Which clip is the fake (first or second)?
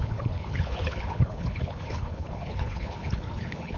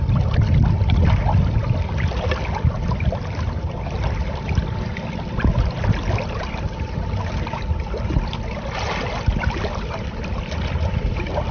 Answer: first